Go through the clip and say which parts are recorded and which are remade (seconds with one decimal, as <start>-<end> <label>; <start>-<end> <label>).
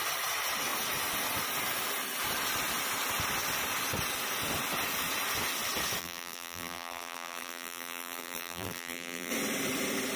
0.0-6.0 recorded; 6.0-9.3 remade; 9.3-10.2 recorded